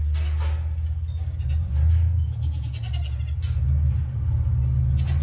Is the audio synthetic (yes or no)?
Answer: no